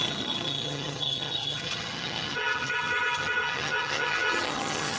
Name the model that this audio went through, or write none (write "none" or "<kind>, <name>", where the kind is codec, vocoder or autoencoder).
vocoder, HiFi-GAN